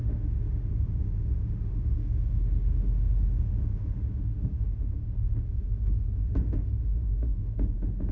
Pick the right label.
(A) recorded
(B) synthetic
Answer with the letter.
B